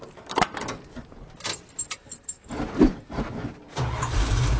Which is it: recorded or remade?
recorded